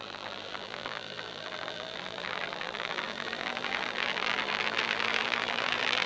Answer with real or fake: fake